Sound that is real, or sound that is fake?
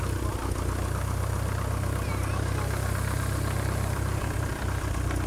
real